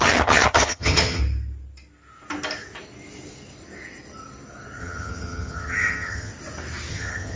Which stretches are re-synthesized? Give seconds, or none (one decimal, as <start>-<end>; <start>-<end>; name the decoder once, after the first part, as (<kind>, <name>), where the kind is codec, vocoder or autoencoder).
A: 0.0-1.2 (vocoder, HiFi-GAN); 4.8-6.3; 6.9-7.4